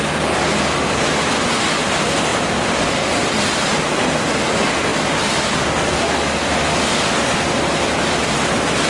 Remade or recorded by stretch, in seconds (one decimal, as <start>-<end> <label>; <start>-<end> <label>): 0.0-8.9 recorded